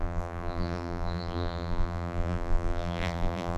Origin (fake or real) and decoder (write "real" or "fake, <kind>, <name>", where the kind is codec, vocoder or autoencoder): fake, vocoder, BigVGAN v2